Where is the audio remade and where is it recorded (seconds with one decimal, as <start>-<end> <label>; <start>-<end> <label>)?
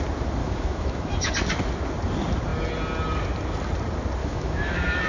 0.0-0.4 recorded; 0.4-1.3 remade; 1.3-4.2 recorded; 4.2-5.1 remade